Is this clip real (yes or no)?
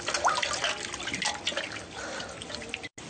yes